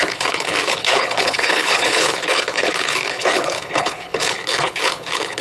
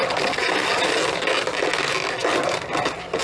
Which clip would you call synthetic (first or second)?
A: first